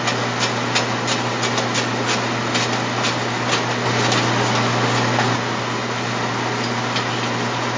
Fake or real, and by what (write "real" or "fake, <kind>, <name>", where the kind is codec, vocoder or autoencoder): real